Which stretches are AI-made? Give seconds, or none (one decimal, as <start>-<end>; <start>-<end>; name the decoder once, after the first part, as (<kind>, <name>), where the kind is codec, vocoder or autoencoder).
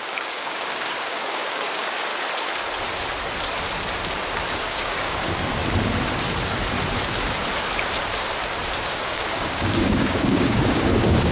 0.0-2.1 (codec, DAC); 4.6-5.6; 8.8-11.3